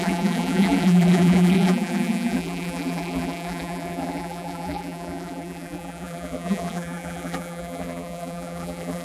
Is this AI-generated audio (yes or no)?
yes